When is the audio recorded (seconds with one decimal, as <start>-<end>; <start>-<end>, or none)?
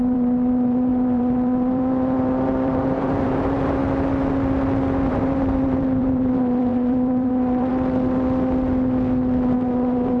3.8-5.1; 7.7-9.5